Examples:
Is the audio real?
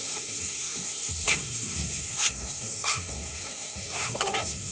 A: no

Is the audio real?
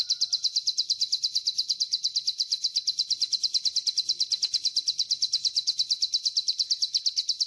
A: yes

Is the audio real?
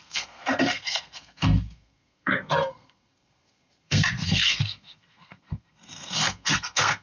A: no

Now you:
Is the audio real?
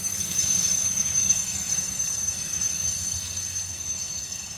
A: no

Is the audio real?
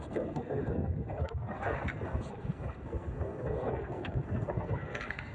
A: no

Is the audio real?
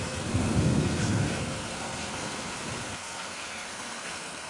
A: no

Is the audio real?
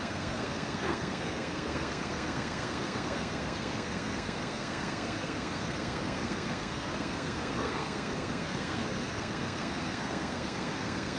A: no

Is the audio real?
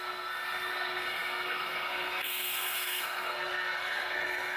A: no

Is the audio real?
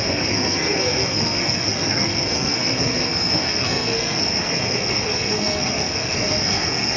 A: no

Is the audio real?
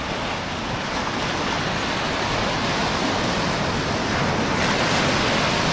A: yes